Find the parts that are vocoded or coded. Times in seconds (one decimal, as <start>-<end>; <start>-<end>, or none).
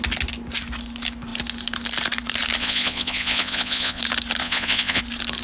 2.6-4.0; 4.4-5.0